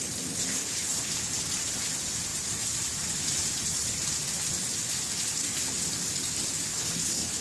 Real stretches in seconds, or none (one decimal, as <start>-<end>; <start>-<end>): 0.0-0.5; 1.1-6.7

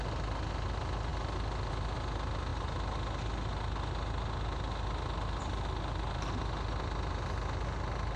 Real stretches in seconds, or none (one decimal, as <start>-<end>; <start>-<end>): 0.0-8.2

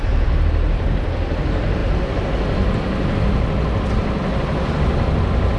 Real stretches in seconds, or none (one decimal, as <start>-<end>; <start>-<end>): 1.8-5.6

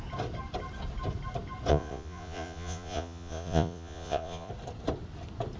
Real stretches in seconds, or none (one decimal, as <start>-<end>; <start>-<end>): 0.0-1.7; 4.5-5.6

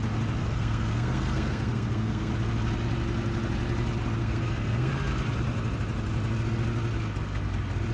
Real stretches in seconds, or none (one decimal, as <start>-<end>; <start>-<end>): 0.0-0.4; 2.3-4.2; 4.9-7.9

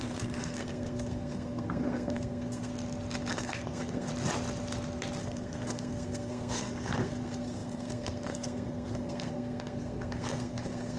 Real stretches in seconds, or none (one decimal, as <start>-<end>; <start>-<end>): 2.7-3.3; 4.1-5.2